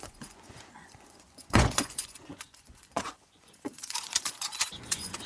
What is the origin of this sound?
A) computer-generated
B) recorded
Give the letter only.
A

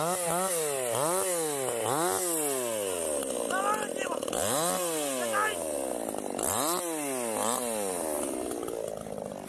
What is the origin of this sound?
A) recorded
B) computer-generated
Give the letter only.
A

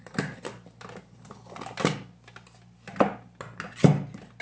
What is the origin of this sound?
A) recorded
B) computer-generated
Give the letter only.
A